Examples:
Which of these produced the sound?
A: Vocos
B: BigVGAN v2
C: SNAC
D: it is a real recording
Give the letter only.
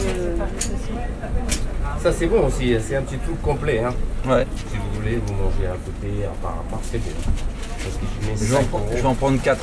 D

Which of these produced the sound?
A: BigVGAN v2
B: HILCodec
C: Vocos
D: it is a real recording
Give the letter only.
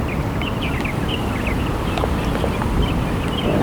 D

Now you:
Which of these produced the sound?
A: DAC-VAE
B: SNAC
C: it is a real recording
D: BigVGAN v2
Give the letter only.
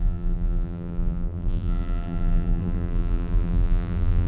D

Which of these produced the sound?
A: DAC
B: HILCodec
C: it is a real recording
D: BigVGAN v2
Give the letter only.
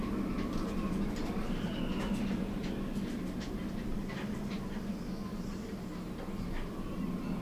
C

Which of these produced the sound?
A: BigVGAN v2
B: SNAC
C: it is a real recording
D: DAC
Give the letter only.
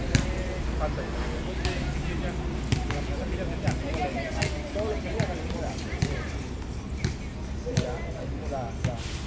C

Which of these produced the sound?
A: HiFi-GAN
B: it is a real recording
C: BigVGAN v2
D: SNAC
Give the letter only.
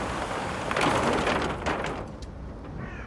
C